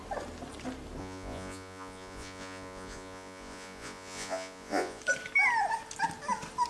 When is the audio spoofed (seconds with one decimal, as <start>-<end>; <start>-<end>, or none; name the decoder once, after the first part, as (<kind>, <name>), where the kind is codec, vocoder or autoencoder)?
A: 1.0-5.0 (vocoder, Vocos)